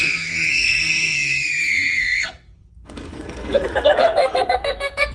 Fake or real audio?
fake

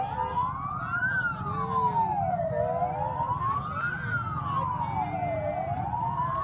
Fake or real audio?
real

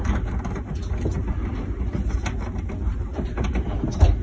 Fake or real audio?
real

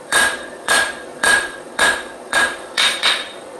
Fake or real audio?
fake